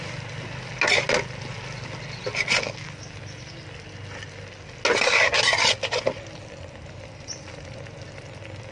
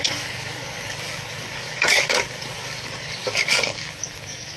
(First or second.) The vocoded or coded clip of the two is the second